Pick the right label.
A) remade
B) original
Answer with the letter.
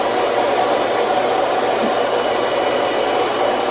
B